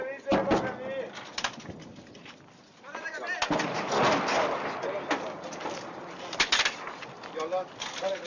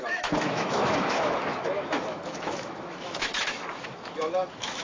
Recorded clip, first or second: first